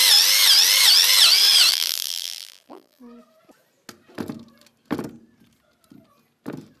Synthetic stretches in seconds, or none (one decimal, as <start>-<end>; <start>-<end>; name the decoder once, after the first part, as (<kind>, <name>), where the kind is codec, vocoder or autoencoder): 1.7-3.0 (vocoder, BigVGAN v2)